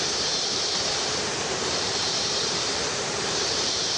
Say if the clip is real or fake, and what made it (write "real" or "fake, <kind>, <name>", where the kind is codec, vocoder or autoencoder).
fake, vocoder, BigVGAN v2